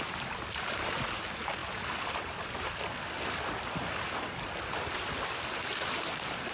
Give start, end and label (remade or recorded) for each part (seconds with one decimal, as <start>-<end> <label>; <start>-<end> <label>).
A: 0.0-6.5 recorded